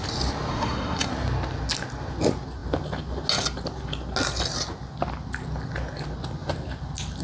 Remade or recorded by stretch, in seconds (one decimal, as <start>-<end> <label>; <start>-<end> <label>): 0.0-0.5 recorded; 0.5-1.1 remade; 1.1-7.2 recorded